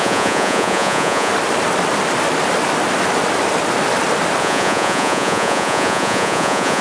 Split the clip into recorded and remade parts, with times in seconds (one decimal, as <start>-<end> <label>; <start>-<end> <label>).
0.0-1.3 remade; 1.3-4.4 recorded; 4.4-6.8 remade

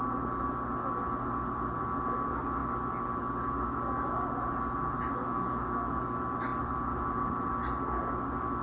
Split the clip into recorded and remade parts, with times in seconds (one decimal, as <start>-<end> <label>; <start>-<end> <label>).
0.0-5.2 recorded; 5.2-5.9 remade; 5.9-8.6 recorded